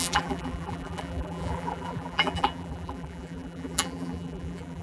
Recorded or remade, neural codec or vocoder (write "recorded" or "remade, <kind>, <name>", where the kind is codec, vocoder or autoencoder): remade, vocoder, BigVGAN v2